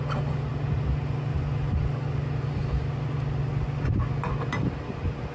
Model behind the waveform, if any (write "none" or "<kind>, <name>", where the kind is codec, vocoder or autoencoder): none